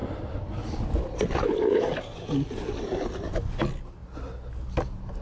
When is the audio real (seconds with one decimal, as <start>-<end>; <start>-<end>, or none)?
0.0-5.2